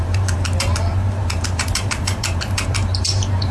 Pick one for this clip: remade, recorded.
remade